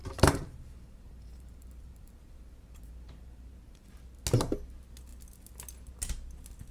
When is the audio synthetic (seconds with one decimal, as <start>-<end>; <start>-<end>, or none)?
0.0-4.0